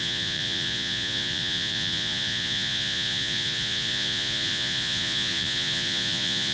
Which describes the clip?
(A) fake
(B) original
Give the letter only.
A